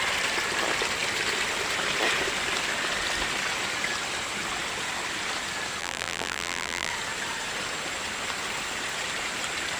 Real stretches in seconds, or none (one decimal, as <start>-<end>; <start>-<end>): 0.0-5.8; 6.9-9.8

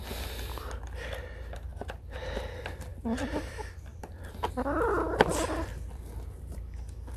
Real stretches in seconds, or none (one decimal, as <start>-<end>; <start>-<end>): 0.0-5.7; 6.4-7.2